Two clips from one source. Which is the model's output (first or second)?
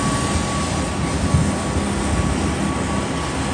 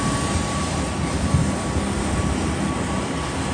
second